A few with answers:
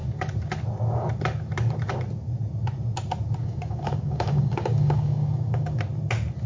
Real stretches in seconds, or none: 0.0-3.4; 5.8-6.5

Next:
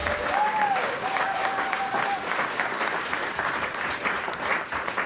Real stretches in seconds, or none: 3.1-5.1

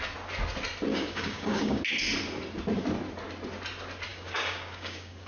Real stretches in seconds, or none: 0.0-0.9; 1.8-4.1

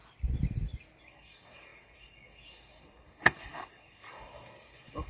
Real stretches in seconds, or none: 0.0-1.0